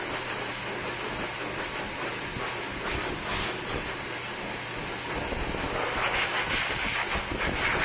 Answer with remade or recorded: recorded